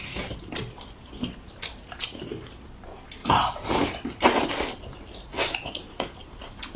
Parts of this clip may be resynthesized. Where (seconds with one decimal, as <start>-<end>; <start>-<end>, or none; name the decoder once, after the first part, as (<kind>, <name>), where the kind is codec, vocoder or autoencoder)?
none